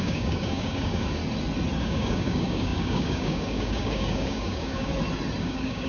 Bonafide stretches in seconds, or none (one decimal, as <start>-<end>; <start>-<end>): 1.2-1.8; 4.9-5.4